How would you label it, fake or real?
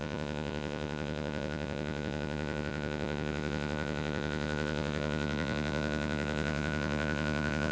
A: fake